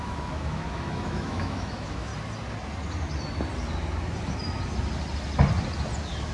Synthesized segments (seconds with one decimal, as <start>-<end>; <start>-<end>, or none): 0.0-2.1